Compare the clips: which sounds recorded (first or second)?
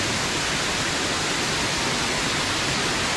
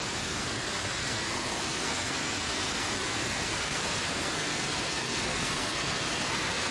first